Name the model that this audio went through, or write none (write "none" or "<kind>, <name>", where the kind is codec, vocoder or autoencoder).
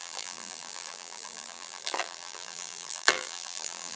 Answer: vocoder, BigVGAN v2